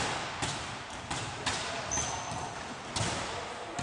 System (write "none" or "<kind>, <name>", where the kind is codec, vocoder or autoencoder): none